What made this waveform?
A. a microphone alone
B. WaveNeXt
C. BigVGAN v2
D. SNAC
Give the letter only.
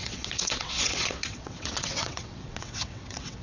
B